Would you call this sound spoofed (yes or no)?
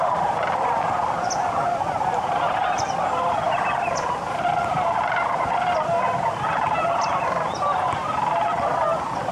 no